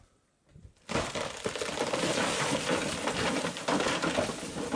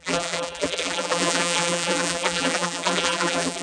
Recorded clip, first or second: first